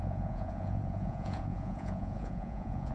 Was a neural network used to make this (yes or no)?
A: yes